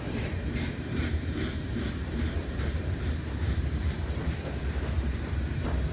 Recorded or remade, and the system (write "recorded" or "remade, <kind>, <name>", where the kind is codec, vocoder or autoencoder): remade, vocoder, BigVGAN v2